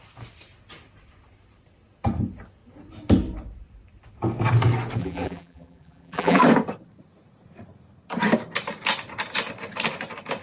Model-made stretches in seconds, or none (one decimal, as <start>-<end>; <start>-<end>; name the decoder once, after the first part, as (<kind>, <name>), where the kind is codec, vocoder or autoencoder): 5.0-6.4 (vocoder, BigVGAN v2)